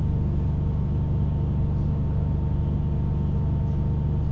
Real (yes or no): yes